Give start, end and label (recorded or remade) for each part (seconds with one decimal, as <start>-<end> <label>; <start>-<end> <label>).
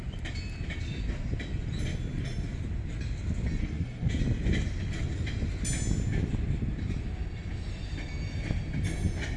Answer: 0.0-3.6 recorded; 3.6-4.1 remade; 4.1-9.4 recorded